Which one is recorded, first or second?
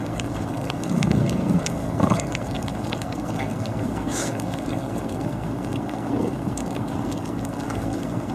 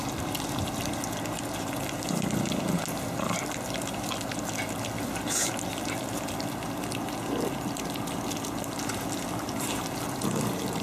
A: second